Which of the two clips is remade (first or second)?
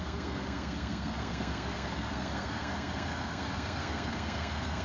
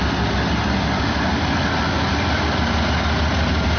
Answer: first